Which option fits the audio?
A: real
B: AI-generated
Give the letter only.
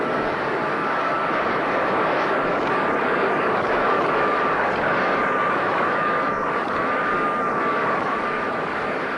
B